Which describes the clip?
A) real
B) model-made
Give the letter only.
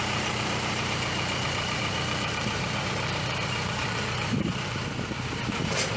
B